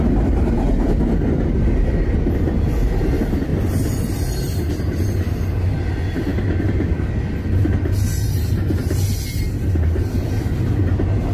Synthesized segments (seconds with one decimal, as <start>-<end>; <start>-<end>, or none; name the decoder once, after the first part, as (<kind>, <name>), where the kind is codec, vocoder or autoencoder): none